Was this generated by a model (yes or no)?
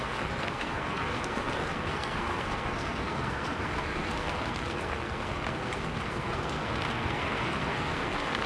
yes